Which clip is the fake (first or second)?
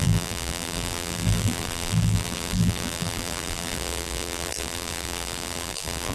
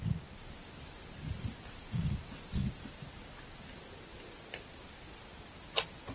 first